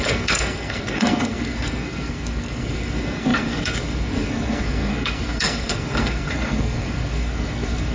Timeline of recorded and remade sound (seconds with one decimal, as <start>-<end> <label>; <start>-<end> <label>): 0.0-7.9 remade